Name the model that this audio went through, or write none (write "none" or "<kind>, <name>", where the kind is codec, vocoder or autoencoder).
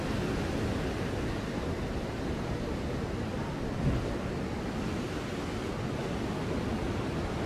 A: none